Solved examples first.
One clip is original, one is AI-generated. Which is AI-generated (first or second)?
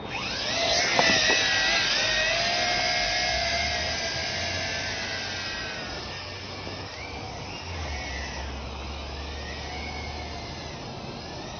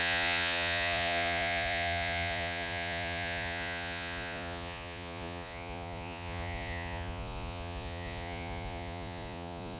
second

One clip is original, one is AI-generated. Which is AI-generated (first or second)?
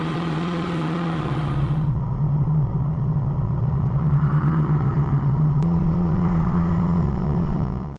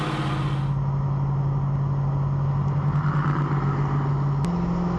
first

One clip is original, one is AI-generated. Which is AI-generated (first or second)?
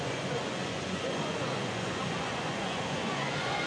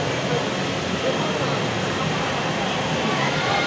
first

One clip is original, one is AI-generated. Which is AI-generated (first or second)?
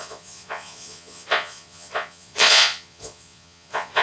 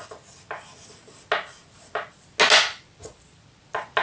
first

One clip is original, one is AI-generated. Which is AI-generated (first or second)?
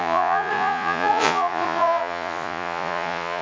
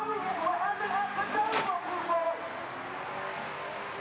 first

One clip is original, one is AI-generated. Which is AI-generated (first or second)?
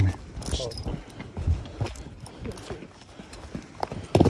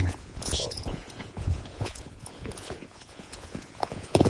second